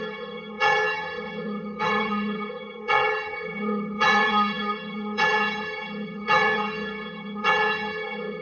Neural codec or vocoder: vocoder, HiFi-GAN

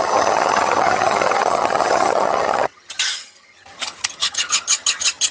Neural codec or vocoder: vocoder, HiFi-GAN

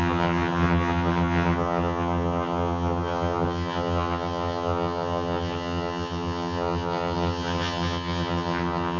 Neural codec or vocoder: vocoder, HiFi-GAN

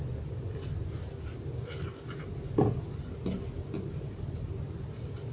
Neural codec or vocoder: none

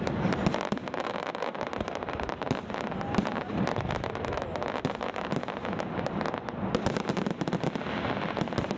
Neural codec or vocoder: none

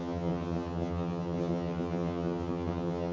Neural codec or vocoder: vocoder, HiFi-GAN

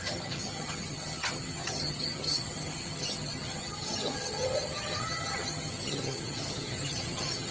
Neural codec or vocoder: vocoder, HiFi-GAN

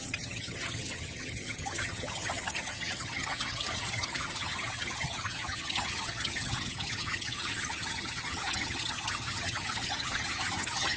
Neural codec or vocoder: vocoder, HiFi-GAN